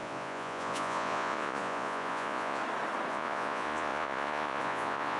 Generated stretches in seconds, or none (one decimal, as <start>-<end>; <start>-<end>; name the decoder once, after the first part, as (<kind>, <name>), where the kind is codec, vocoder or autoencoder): 0.0-2.6 (vocoder, Vocos); 3.1-5.2